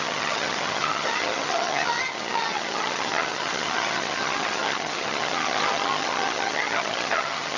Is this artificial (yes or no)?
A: yes